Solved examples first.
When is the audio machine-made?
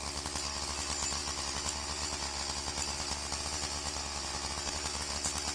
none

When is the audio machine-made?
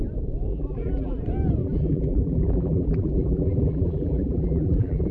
0.5-1.2 (vocoder, BigVGAN v2); 1.6-5.1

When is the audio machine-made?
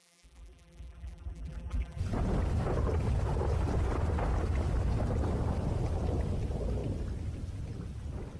0.0-2.0 (vocoder, BigVGAN v2)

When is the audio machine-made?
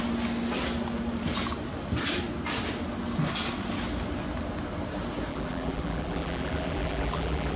5.3-7.6 (vocoder, BigVGAN v2)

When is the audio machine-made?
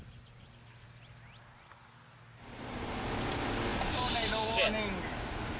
none